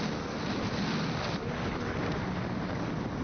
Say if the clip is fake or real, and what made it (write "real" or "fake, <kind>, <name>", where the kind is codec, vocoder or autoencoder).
real